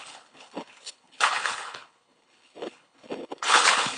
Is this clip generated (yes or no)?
yes